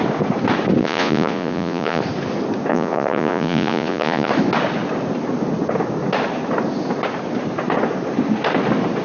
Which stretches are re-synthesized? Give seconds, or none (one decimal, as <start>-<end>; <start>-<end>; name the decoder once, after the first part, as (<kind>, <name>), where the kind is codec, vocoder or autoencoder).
0.8-2.0 (vocoder, Vocos); 2.7-4.3